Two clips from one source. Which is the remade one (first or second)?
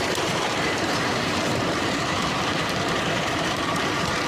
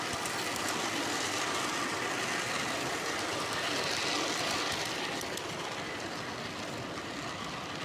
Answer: first